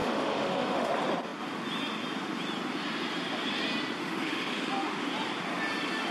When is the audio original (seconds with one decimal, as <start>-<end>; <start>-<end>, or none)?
0.9-4.0; 5.1-6.1